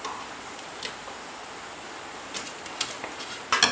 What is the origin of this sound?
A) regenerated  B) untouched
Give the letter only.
B